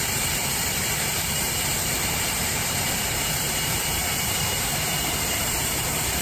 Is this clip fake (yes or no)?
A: yes